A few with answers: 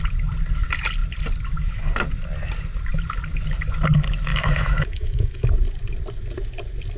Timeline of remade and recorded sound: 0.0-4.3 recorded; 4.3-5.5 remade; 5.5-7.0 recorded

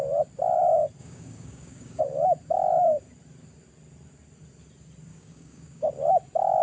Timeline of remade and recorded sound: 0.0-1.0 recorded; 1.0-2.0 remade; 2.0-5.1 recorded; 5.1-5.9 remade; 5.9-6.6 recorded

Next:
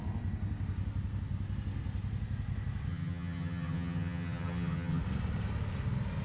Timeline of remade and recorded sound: 0.0-2.9 recorded; 2.9-5.0 remade; 5.0-6.2 recorded

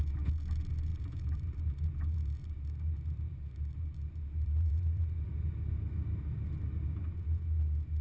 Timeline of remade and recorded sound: 0.0-0.9 recorded; 0.9-5.7 remade; 5.7-8.0 recorded